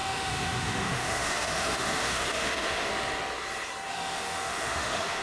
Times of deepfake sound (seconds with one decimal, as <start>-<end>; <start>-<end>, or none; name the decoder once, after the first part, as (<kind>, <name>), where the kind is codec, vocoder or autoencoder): 0.0-2.9 (autoencoder, DAC-VAE); 3.9-5.2